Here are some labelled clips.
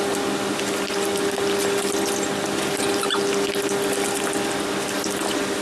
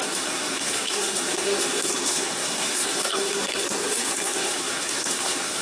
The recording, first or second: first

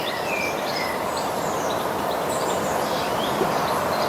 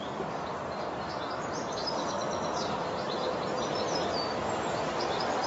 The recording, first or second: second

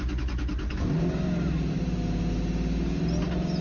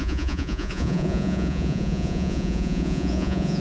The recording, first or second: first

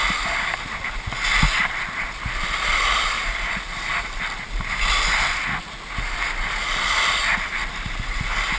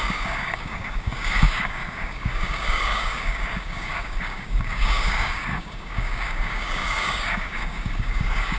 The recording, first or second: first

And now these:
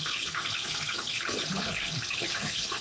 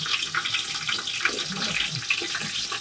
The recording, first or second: second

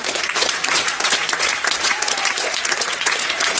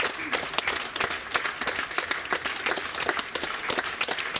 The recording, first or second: second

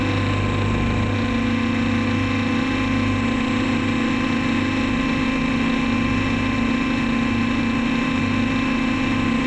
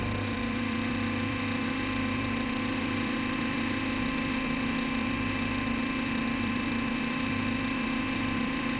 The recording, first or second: first